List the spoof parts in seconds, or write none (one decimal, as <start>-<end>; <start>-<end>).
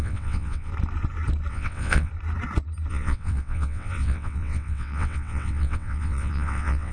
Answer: 0.0-0.7; 1.5-2.1; 2.9-6.9